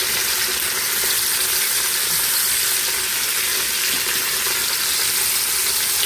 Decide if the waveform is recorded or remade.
recorded